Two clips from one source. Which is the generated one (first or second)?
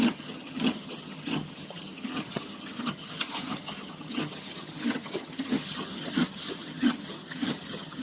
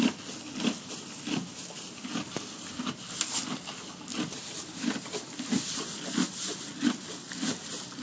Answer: first